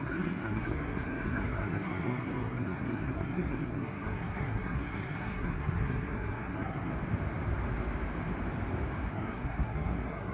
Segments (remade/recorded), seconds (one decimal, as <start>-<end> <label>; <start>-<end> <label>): 0.0-6.9 remade; 6.9-9.1 recorded; 9.1-10.3 remade